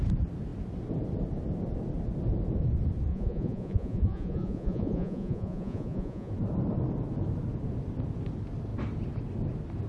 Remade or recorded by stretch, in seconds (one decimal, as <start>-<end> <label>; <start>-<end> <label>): 0.0-3.1 recorded; 3.1-6.3 remade; 6.3-9.9 recorded